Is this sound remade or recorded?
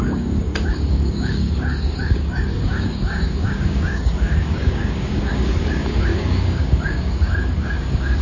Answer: remade